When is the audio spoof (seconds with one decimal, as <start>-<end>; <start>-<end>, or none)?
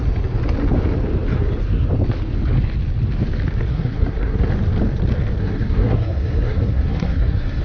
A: 3.7-4.5; 5.4-7.6